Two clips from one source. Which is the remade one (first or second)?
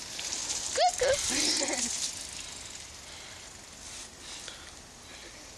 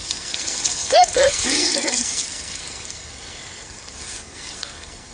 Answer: second